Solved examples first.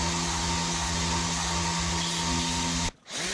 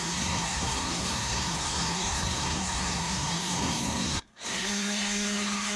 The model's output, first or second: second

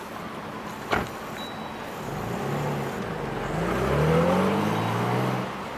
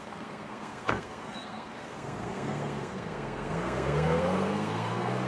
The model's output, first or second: second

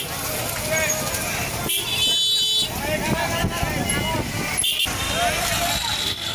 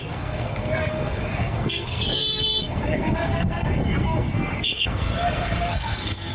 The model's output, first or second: second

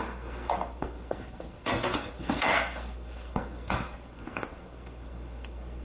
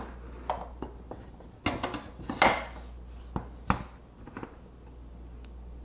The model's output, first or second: first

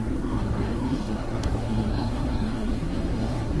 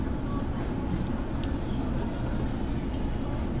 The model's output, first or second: first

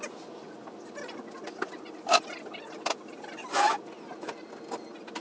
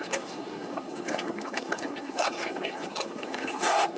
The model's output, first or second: second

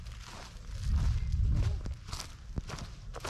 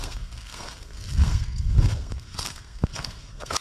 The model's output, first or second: second